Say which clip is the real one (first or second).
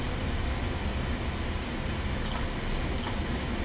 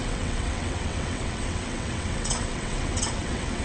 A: first